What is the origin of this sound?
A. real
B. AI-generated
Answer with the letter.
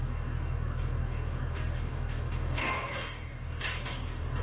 B